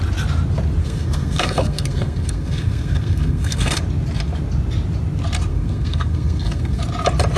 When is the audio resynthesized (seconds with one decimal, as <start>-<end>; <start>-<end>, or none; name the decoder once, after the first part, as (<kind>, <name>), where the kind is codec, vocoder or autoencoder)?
0.8-3.8 (codec, SNAC); 5.5-6.8